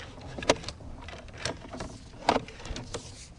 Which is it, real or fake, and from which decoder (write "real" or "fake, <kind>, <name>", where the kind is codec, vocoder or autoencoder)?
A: real